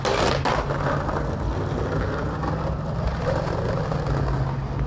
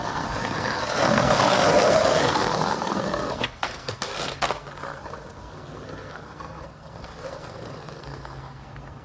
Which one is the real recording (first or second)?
first